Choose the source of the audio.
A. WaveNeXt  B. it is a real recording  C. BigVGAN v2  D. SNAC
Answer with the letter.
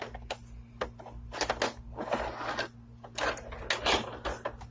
B